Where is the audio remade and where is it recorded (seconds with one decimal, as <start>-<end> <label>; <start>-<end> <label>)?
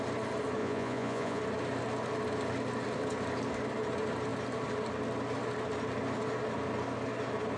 0.0-0.6 recorded; 0.6-1.4 remade; 1.4-7.6 recorded